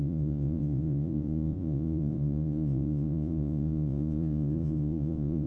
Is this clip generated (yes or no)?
yes